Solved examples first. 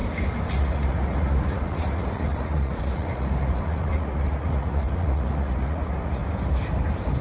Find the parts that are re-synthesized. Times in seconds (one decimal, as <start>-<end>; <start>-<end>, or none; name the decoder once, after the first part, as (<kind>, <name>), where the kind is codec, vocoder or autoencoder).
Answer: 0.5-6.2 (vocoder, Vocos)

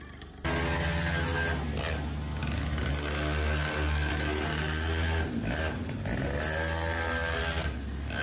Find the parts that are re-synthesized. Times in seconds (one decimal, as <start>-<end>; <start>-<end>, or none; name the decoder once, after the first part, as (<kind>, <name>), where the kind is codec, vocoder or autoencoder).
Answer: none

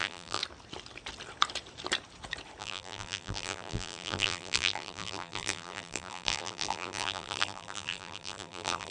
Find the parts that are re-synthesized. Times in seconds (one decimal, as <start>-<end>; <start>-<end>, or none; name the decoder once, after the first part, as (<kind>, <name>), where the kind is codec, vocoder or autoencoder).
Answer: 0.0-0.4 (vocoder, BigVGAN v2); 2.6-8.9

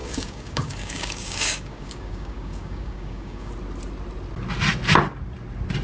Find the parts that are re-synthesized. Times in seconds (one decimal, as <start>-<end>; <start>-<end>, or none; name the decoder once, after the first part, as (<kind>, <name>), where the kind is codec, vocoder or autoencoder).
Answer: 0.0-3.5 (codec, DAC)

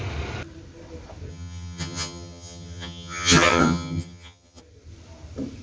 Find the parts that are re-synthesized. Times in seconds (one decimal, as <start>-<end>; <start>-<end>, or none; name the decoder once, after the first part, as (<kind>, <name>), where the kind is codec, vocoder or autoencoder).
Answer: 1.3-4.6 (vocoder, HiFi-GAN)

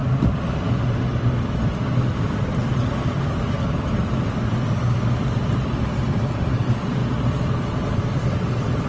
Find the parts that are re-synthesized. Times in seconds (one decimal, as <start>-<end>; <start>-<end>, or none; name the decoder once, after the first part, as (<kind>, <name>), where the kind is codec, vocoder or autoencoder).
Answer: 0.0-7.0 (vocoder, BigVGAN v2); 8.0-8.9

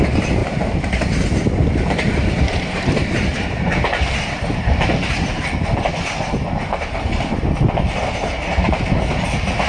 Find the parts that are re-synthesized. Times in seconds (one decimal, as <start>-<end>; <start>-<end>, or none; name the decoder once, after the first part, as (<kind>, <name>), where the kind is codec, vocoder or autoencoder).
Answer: 0.4-0.9 (vocoder, BigVGAN v2); 2.5-3.7

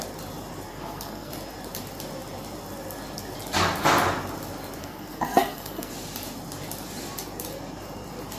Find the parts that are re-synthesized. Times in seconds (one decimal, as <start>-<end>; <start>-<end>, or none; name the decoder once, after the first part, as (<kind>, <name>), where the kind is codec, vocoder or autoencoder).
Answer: 0.7-1.3 (codec, SNAC); 4.8-5.9